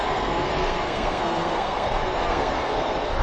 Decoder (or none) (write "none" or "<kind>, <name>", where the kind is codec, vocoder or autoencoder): codec, SNAC